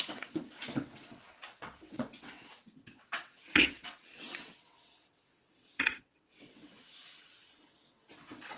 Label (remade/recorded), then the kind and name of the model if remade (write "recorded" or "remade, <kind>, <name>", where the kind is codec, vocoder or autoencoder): remade, vocoder, WaveNeXt